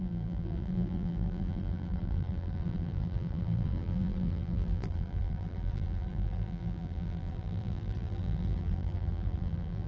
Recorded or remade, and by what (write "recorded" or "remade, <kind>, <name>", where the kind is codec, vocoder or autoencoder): remade, vocoder, BigVGAN v2